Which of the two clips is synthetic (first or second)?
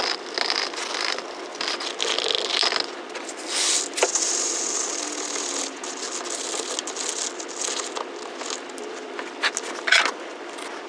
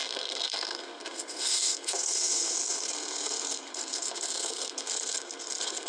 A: second